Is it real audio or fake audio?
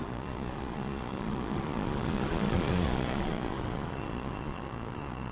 fake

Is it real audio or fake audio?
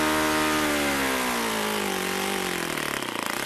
real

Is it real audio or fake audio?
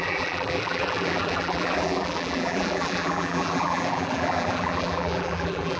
fake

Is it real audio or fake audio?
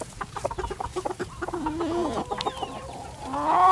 real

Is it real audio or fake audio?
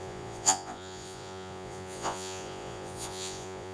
fake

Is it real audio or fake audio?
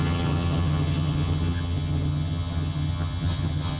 fake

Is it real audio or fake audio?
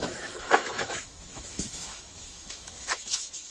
fake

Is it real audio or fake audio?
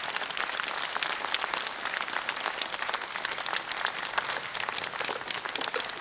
real